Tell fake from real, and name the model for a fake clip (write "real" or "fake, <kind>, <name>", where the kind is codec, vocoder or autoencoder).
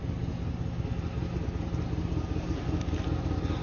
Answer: real